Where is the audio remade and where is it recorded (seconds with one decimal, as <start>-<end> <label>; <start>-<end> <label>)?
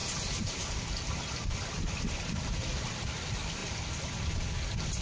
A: 0.0-2.3 recorded; 2.3-3.6 remade; 3.6-5.0 recorded